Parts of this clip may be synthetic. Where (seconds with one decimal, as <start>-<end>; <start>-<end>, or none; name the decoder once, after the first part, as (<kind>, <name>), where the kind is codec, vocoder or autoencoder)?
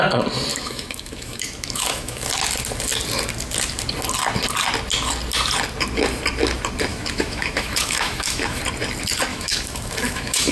0.5-2.3 (autoencoder, DAC-VAE); 6.9-8.6; 9.3-10.5